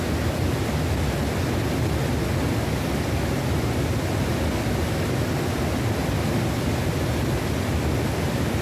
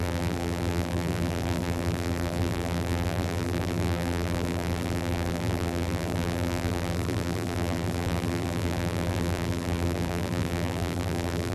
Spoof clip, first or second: second